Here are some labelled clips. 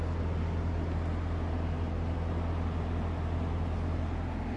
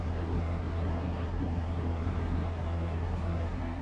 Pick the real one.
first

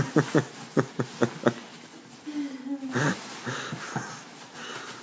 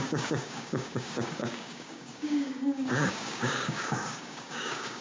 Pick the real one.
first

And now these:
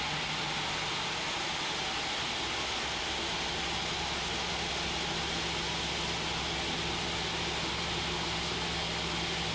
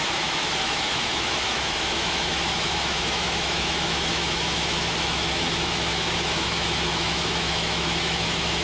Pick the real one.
first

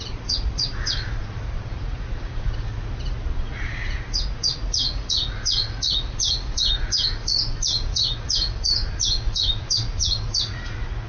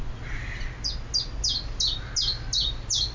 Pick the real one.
second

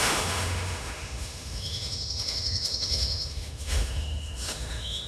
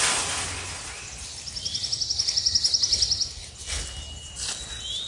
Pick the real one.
second